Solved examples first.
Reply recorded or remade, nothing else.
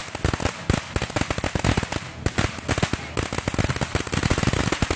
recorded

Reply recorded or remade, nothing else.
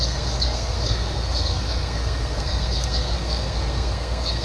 remade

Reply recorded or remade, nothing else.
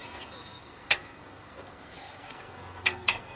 remade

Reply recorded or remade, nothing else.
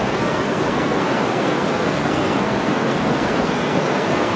remade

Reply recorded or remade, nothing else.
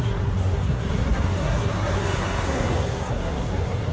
remade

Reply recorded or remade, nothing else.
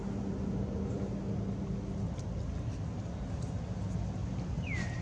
recorded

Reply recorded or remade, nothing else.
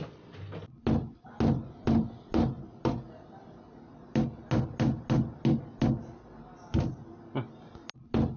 recorded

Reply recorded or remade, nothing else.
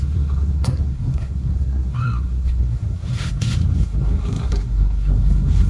remade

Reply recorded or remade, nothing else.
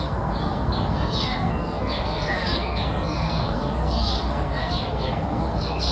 remade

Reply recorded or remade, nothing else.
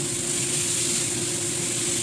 recorded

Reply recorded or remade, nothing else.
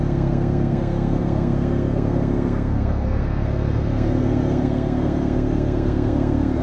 remade